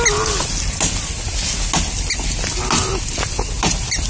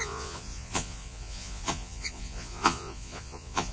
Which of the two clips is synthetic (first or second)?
second